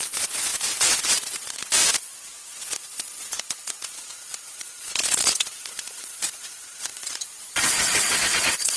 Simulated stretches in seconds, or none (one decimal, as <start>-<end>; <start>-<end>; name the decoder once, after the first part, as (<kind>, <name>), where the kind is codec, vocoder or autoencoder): 0.0-8.8 (vocoder, Vocos)